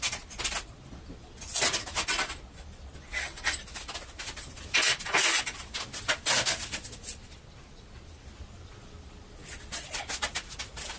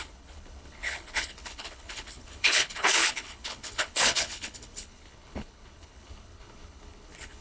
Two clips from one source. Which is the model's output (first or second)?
second